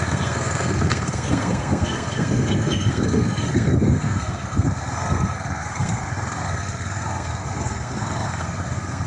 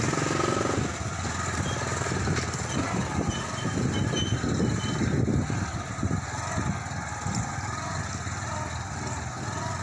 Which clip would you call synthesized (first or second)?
first